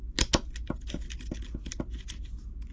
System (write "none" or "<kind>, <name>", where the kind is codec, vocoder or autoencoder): none